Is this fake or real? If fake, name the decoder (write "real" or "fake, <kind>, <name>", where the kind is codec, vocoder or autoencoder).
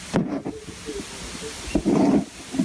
real